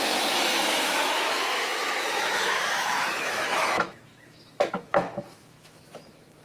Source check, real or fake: fake